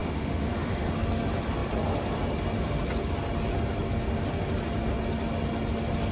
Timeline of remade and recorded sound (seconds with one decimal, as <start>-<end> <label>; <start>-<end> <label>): 0.0-0.9 remade; 0.9-6.1 recorded